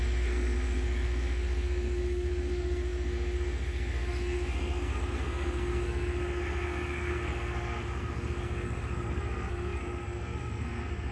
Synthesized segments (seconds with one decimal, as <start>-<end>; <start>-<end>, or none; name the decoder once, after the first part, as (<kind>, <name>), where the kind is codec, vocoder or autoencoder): 0.0-11.1 (codec, SNAC)